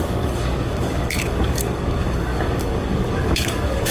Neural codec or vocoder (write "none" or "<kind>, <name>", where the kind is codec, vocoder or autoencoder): codec, DAC